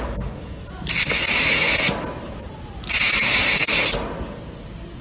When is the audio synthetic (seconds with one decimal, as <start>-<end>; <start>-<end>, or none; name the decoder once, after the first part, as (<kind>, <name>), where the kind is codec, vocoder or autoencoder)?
0.0-0.6 (codec, DAC); 3.2-3.7